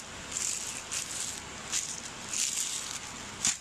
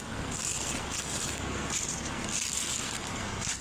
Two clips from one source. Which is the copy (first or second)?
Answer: second